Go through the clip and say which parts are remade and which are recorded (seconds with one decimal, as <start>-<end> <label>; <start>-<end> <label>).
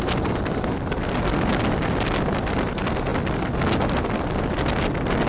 0.0-5.3 recorded